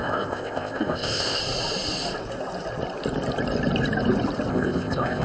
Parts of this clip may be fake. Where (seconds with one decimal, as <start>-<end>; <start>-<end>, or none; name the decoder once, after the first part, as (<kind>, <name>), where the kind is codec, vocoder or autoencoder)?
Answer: 0.0-1.4 (codec, ZipCodec); 4.5-5.2